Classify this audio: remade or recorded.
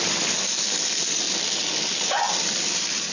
recorded